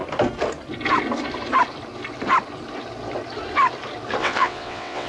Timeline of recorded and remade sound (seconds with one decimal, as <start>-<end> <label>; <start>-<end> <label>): 0.0-4.2 recorded; 4.2-5.1 remade